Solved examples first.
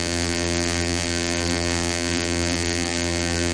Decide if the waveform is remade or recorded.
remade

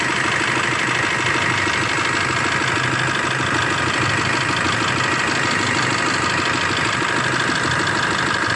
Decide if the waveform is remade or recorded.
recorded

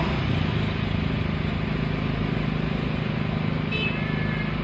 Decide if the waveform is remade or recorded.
recorded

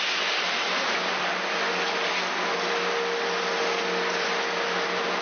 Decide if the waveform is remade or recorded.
recorded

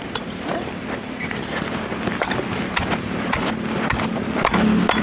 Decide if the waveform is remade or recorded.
recorded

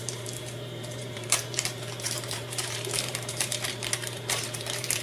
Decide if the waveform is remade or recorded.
remade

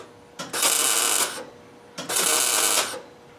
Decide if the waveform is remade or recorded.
recorded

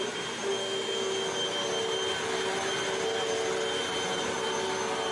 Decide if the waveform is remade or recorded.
recorded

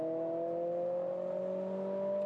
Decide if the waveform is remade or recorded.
recorded